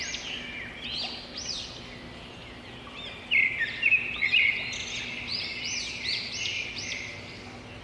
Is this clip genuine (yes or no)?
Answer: yes